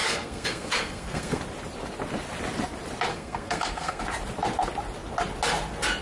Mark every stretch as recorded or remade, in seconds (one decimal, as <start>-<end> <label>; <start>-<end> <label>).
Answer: 0.0-1.4 remade; 1.4-3.1 recorded; 3.1-4.0 remade; 4.0-6.0 recorded